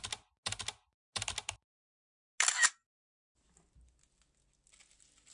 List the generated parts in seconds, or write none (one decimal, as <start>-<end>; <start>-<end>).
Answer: none